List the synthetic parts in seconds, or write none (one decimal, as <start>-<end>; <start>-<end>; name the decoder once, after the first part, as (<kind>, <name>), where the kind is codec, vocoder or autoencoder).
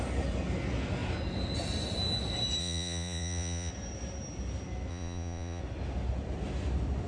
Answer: 2.6-3.7 (vocoder, Vocos); 4.9-5.6